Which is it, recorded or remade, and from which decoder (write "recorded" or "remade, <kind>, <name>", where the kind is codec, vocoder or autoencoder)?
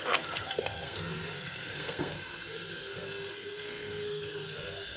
remade, codec, SNAC